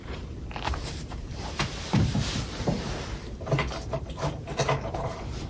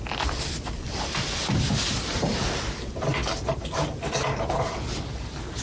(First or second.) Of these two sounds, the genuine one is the second